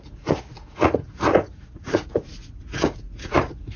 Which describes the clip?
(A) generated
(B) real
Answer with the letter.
A